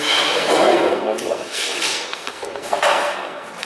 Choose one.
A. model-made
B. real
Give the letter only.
A